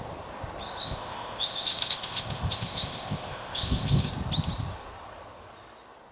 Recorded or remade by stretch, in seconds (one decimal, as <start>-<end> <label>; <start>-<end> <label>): 0.0-0.8 recorded; 0.8-4.1 remade; 4.1-6.1 recorded